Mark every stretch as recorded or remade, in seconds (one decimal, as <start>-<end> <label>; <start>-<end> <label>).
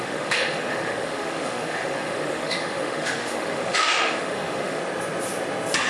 0.0-4.8 remade; 4.8-5.9 recorded